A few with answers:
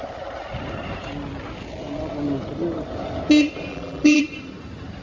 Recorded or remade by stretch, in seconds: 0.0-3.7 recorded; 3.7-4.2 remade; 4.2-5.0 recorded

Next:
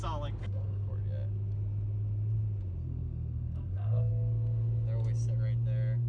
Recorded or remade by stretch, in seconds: 0.0-0.4 recorded; 0.4-0.9 remade; 0.9-2.8 recorded; 2.8-4.1 remade; 4.1-6.1 recorded

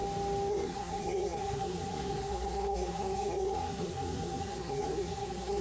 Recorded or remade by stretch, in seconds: 0.0-0.5 recorded; 0.5-5.6 remade